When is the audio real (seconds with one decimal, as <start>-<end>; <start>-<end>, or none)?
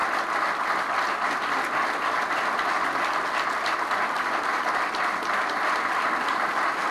0.0-6.9